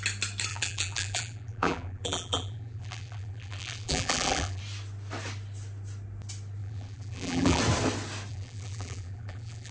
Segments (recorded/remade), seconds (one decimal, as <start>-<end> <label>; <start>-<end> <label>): 0.0-0.5 recorded; 0.5-4.6 remade; 4.6-6.6 recorded; 6.6-7.6 remade; 7.6-8.3 recorded; 8.3-9.7 remade